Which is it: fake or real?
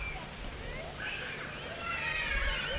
real